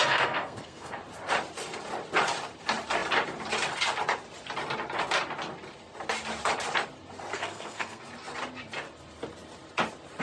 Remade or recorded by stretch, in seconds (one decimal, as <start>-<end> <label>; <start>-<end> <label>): 0.0-1.0 remade; 1.0-7.3 recorded; 7.3-8.0 remade; 8.0-10.2 recorded